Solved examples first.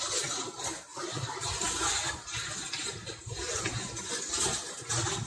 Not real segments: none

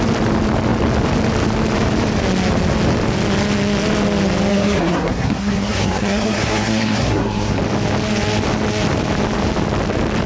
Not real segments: 4.5-7.6 (codec, SNAC)